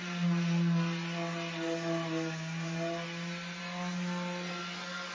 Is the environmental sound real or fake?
real